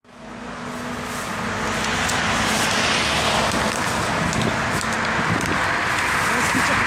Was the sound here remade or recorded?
recorded